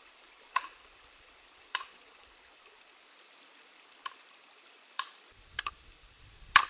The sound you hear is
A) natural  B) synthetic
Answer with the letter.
B